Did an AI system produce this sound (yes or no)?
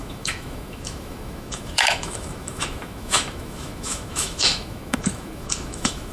yes